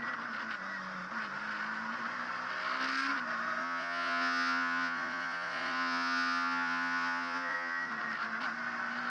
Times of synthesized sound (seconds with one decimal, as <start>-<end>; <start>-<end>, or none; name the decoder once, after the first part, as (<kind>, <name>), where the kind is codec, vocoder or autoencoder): 3.6-7.9 (vocoder, Vocos)